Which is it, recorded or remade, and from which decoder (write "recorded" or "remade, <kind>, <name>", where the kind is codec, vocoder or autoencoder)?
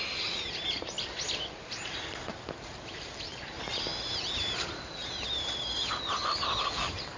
recorded